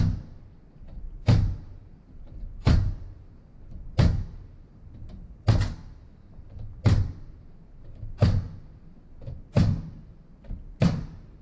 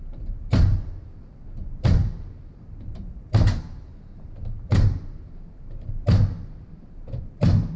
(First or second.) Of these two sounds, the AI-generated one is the second